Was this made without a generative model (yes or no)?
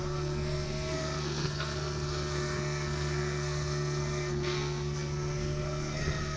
no